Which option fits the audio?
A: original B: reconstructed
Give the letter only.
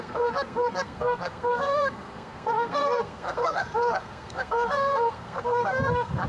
B